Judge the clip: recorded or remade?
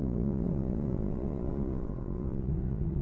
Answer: remade